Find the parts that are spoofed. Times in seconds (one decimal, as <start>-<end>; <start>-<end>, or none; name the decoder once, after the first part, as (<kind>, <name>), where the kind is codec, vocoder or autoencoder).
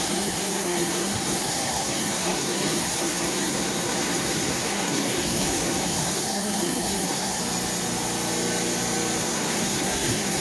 0.0-7.4 (codec, SNAC); 9.2-10.4